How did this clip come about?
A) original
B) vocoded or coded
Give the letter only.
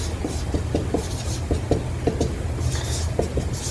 A